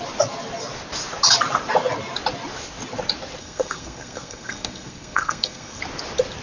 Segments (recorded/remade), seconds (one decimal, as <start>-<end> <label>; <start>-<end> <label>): 0.0-3.4 recorded; 3.4-5.8 remade; 5.8-6.4 recorded